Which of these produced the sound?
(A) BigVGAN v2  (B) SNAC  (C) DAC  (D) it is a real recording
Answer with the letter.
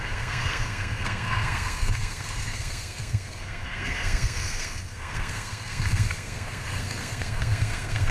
B